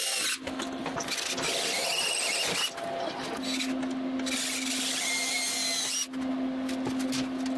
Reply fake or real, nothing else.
real